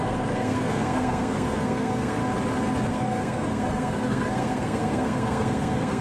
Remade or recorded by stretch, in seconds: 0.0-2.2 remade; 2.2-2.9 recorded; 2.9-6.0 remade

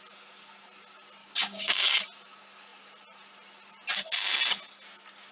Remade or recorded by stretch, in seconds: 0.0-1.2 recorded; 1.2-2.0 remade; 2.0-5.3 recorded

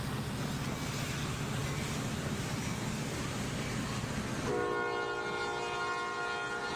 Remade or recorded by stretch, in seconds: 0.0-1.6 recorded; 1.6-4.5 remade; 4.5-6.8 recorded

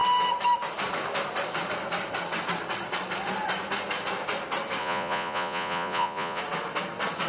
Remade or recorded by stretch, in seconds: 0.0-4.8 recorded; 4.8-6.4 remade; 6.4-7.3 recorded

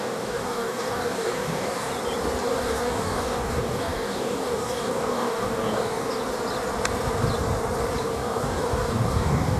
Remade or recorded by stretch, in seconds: 0.0-1.9 remade; 1.9-2.4 recorded; 2.4-6.2 remade; 6.2-8.0 recorded; 8.0-9.6 remade

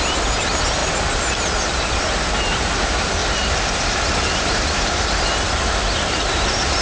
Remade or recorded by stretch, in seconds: 0.0-3.2 recorded; 3.2-5.4 remade; 5.4-6.8 recorded

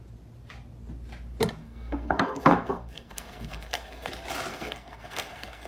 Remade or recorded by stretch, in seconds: 0.0-1.6 recorded; 1.6-4.1 remade; 4.1-4.5 recorded; 4.5-5.7 remade

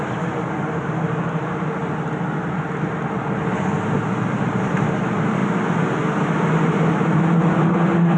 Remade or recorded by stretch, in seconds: 0.0-1.8 remade; 1.8-4.5 recorded; 4.5-5.4 remade; 5.4-6.9 recorded; 6.9-8.2 remade